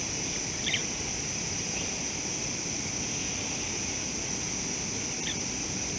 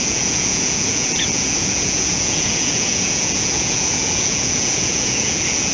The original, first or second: first